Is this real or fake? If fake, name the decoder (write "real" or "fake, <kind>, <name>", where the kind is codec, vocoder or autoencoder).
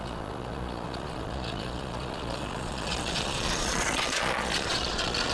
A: fake, vocoder, Vocos